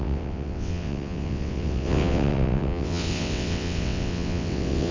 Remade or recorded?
remade